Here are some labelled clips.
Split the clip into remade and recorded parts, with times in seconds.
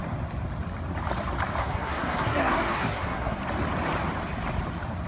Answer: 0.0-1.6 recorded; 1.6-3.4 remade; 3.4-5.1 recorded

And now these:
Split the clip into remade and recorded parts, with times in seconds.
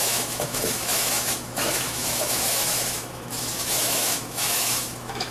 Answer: 0.0-5.3 remade